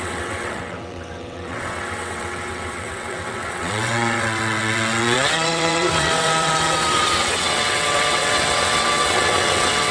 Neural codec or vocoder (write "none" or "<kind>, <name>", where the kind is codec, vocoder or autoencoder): vocoder, WaveNeXt